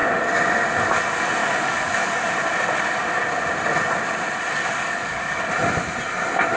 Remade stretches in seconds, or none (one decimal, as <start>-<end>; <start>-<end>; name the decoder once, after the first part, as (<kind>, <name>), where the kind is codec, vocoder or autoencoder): 1.4-2.3 (codec, DAC); 4.6-5.4